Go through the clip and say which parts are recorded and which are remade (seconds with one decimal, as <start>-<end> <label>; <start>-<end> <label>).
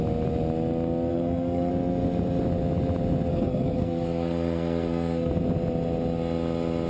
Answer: 0.0-1.1 recorded; 1.1-1.7 remade; 1.7-3.3 recorded; 3.3-5.3 remade; 5.3-6.9 recorded